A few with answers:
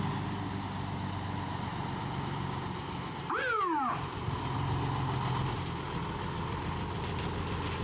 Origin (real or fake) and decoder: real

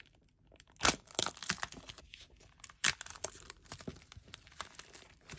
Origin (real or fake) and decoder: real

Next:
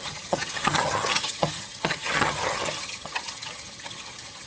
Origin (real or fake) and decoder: fake, vocoder, HiFi-GAN